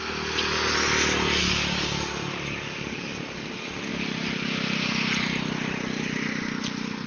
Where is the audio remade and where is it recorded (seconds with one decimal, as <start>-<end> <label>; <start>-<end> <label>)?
0.0-1.4 recorded; 1.4-3.9 remade; 3.9-7.1 recorded